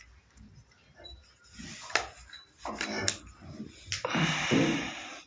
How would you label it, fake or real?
real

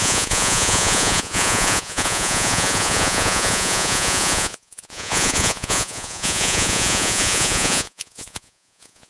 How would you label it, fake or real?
fake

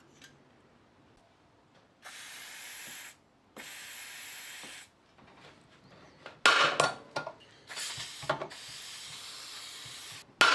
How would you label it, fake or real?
real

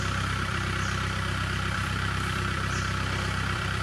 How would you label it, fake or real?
fake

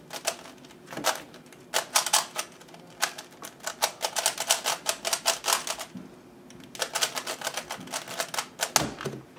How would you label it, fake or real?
real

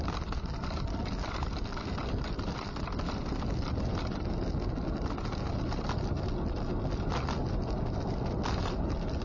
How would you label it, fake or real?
real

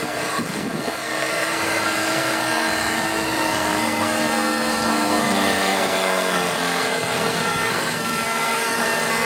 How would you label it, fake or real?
fake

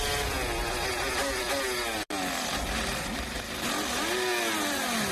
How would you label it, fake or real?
real